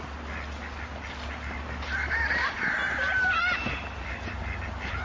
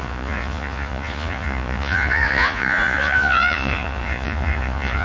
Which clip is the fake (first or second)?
second